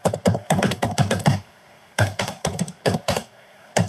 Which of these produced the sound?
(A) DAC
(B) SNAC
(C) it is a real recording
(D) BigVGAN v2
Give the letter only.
B